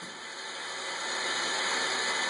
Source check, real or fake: real